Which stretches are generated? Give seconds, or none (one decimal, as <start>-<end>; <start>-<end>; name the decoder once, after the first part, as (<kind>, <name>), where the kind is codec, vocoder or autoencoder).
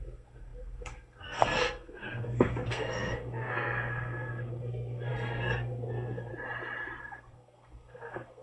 0.0-6.3 (codec, SNAC); 7.0-8.4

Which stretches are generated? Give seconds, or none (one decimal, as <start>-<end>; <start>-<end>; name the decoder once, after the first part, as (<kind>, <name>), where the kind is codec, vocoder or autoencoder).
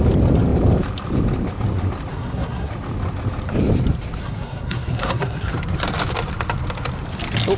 2.1-2.7 (codec, SNAC); 4.2-5.5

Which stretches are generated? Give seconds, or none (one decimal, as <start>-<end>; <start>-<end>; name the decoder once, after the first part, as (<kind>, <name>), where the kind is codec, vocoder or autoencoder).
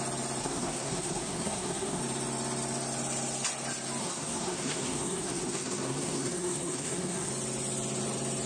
0.4-2.0 (codec, SNAC); 4.0-7.3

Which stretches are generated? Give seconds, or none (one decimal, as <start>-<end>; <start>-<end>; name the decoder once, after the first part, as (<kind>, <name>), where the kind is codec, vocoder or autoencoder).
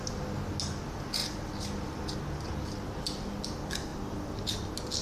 none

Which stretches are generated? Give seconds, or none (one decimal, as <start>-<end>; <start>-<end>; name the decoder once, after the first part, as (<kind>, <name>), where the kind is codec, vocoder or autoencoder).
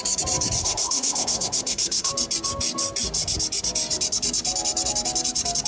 0.6-2.1 (codec, SNAC)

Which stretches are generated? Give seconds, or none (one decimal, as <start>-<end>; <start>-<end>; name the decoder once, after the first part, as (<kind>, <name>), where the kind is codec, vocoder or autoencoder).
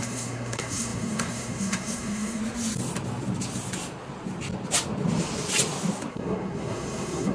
0.0-2.4 (codec, SNAC); 6.1-7.3